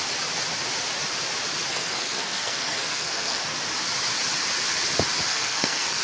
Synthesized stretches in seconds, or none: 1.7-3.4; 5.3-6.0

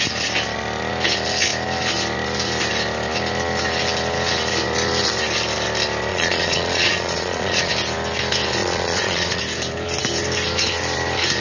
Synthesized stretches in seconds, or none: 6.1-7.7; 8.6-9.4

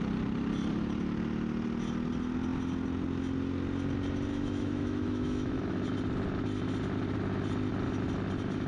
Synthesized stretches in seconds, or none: 4.3-5.8

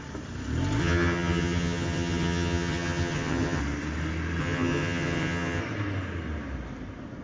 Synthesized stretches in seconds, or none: 0.8-3.6; 4.4-5.6

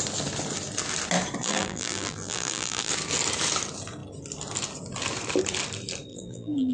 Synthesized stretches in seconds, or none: 1.4-2.9; 6.1-6.7